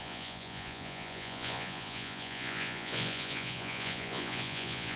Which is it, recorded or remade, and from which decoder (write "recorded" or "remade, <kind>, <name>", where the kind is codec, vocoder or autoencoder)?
remade, vocoder, Vocos